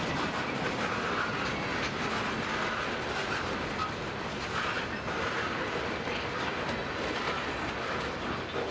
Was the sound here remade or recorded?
recorded